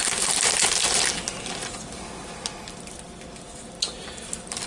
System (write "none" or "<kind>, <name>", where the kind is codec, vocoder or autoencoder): none